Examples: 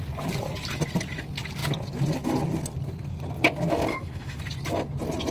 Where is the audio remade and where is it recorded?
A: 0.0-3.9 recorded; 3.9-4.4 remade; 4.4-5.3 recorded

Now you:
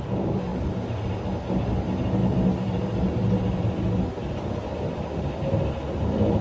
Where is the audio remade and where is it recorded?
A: 0.0-6.4 recorded

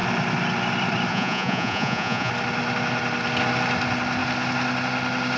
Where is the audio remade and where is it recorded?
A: 0.0-1.1 recorded; 1.1-2.3 remade; 2.3-5.4 recorded

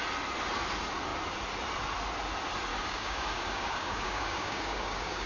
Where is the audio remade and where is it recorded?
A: 0.0-2.7 recorded; 2.7-5.3 remade

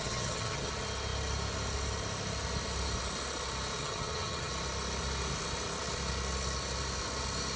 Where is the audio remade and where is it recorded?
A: 0.0-0.7 remade; 0.7-3.8 recorded; 3.8-4.5 remade; 4.5-7.6 recorded

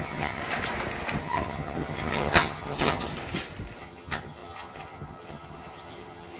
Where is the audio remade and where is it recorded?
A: 0.0-0.4 remade; 0.4-1.2 recorded; 1.2-3.1 remade; 3.1-3.8 recorded; 3.8-6.4 remade

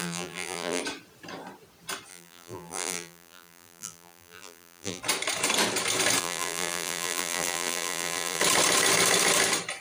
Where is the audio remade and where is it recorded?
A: 0.0-0.8 remade; 0.8-2.1 recorded; 2.1-5.0 remade; 5.0-6.2 recorded; 6.2-8.4 remade; 8.4-9.8 recorded

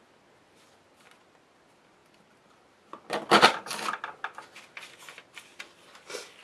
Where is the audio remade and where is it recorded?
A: 0.0-6.4 recorded